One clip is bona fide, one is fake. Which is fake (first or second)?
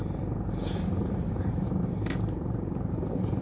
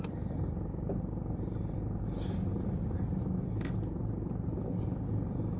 first